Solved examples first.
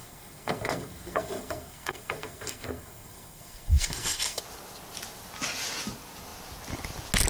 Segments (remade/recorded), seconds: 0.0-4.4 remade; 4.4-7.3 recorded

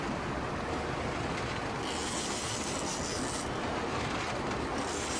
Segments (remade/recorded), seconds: 0.0-5.2 recorded

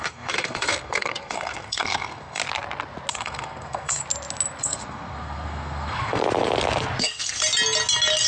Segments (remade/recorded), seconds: 0.0-2.4 remade; 2.4-3.1 recorded; 3.1-4.0 remade; 4.0-4.6 recorded; 4.6-6.2 remade; 6.2-7.0 recorded; 7.0-7.4 remade; 7.4-8.3 recorded

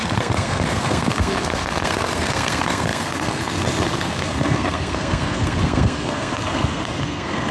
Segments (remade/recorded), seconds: 0.0-7.5 remade